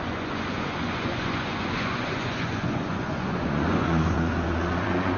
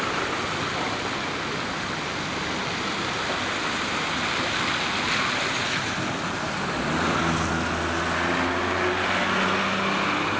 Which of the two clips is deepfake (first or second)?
first